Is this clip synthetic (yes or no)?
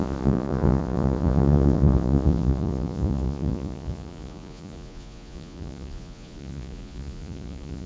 yes